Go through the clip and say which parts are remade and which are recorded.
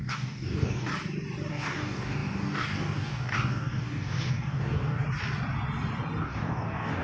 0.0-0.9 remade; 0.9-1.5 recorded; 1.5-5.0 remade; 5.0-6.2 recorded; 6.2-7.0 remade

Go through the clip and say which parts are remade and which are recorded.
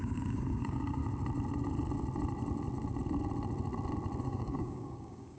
0.0-1.0 remade; 1.0-4.2 recorded; 4.2-5.4 remade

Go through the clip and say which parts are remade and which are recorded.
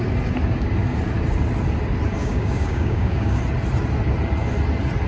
0.0-2.2 recorded; 2.2-3.4 remade; 3.4-5.1 recorded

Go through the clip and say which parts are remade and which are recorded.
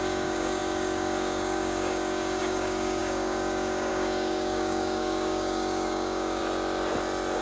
0.0-6.4 remade; 6.4-7.4 recorded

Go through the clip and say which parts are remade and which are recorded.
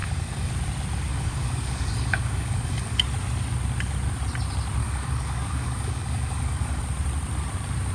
0.0-0.5 remade; 0.5-1.1 recorded; 1.1-3.0 remade; 3.0-4.8 recorded; 4.8-6.8 remade; 6.8-7.9 recorded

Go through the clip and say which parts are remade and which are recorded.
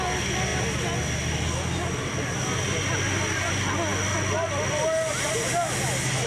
0.0-6.3 recorded